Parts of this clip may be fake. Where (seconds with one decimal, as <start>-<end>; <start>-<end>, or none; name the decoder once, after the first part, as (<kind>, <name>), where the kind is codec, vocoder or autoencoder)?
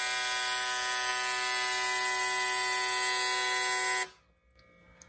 none